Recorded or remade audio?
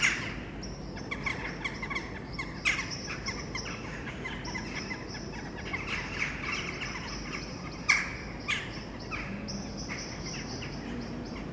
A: recorded